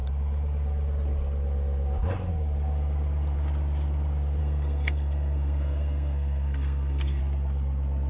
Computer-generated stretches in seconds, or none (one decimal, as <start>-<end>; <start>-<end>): 4.4-7.2